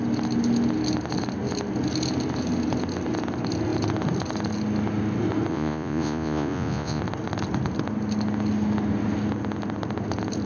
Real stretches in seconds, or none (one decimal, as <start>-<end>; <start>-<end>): 0.0-5.5; 7.0-10.5